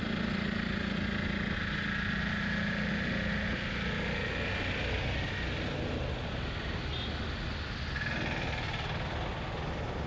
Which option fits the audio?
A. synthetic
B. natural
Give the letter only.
B